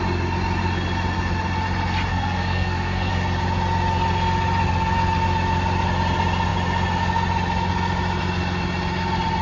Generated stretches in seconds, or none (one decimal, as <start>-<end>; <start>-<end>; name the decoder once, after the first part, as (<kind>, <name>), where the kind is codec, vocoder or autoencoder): 2.1-3.1 (codec, SNAC)